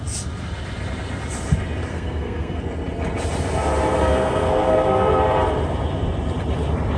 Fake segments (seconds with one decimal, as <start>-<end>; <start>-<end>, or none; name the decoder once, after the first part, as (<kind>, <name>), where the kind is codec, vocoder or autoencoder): 1.9-2.6 (codec, SNAC); 4.0-5.1